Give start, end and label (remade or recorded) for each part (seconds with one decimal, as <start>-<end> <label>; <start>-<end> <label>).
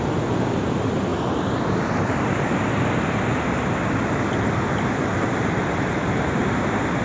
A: 0.0-7.0 recorded